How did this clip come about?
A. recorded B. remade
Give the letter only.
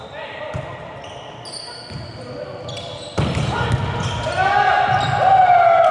A